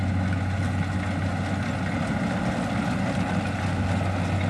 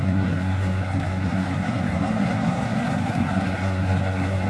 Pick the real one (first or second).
first